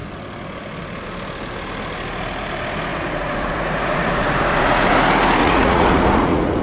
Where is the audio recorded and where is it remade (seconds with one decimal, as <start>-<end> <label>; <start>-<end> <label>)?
0.0-2.9 recorded; 2.9-4.9 remade; 4.9-5.4 recorded; 5.4-6.6 remade